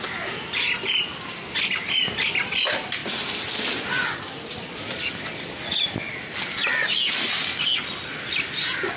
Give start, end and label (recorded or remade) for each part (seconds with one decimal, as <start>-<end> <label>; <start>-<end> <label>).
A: 0.0-9.0 recorded